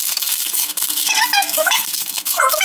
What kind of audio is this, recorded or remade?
remade